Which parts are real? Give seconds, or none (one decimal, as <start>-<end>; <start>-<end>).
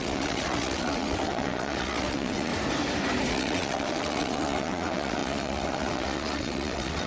2.5-3.3